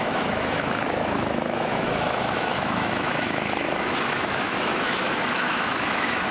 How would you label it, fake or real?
fake